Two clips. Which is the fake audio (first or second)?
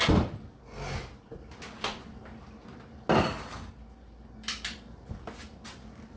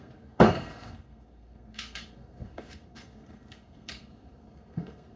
second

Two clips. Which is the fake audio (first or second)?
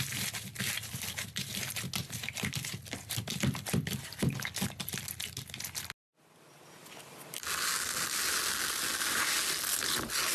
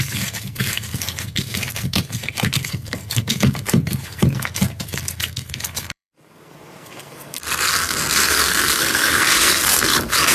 second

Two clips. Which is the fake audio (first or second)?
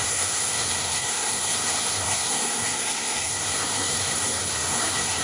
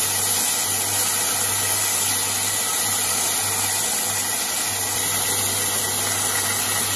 first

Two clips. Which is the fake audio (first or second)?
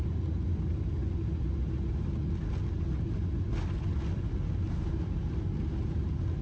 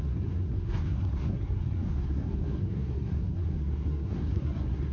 second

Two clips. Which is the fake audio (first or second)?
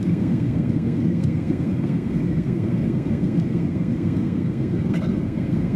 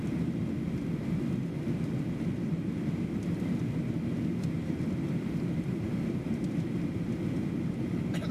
first